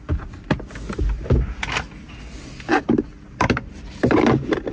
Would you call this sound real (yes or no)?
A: yes